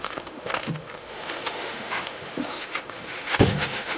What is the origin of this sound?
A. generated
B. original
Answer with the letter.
A